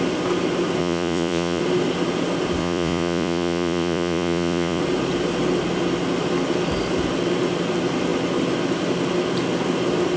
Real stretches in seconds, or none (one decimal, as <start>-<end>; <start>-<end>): 0.0-0.8; 1.6-2.6; 4.8-10.2